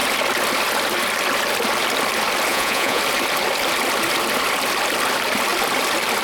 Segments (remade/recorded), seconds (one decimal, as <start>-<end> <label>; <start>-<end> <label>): 0.0-2.5 recorded; 2.5-3.0 remade; 3.0-6.2 recorded